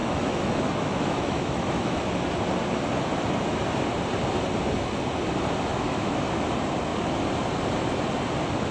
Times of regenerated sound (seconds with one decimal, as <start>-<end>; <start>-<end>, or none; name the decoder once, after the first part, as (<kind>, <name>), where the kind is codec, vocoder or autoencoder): 0.0-1.9 (autoencoder, DAC-VAE); 5.7-6.2